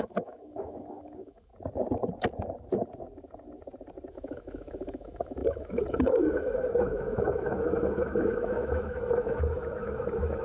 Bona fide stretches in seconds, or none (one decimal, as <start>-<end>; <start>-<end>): 1.5-4.1